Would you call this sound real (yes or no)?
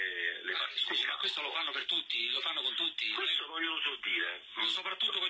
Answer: yes